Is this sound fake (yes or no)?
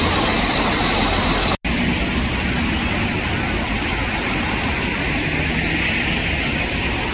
no